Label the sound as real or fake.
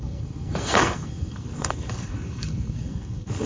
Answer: fake